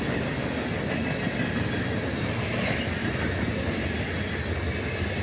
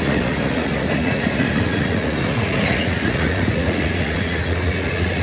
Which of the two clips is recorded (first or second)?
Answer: first